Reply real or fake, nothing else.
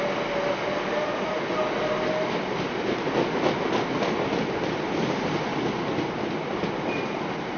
real